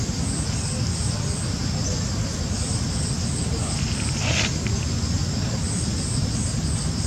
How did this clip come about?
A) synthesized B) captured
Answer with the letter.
B